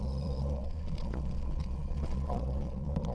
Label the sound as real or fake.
fake